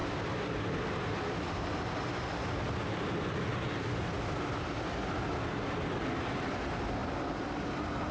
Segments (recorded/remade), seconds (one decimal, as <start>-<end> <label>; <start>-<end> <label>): 0.0-8.1 recorded